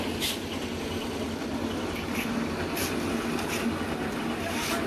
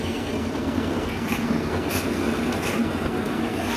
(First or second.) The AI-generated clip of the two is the second